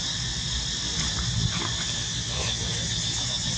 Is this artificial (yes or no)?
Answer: no